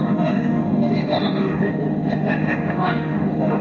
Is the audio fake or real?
fake